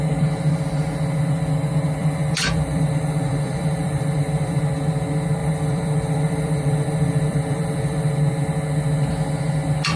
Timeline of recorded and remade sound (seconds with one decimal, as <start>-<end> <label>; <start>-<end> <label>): 0.0-2.0 recorded; 2.0-4.6 remade; 4.6-5.4 recorded; 5.4-8.1 remade; 8.1-10.0 recorded